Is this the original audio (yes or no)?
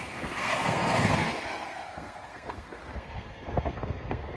no